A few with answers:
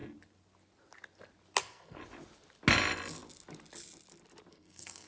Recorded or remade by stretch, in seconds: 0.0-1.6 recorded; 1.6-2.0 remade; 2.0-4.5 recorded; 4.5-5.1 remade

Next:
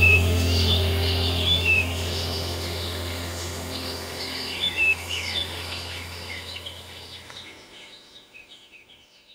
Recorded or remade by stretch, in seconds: 0.0-9.3 remade

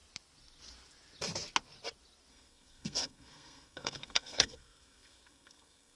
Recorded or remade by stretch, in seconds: 0.0-2.3 recorded; 2.3-6.0 remade

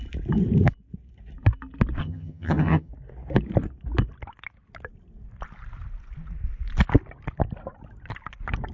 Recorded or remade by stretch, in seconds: 0.0-2.0 recorded; 2.0-2.9 remade; 2.9-8.7 recorded

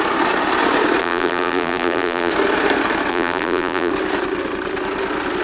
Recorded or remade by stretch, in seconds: 0.0-1.0 recorded; 1.0-2.3 remade; 2.3-3.1 recorded; 3.1-3.9 remade; 3.9-5.4 recorded

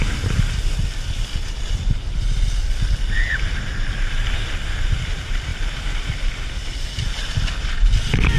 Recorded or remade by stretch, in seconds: 0.0-5.5 remade; 5.5-6.3 recorded; 6.3-8.4 remade

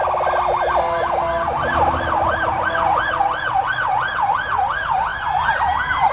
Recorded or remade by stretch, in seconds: 0.0-6.1 recorded